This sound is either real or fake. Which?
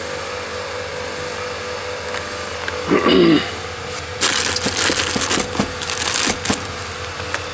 real